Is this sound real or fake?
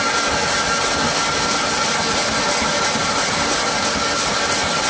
real